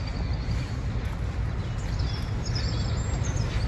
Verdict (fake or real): real